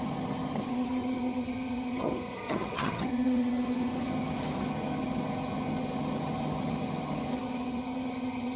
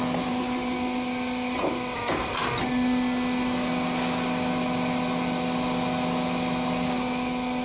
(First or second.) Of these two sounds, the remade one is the first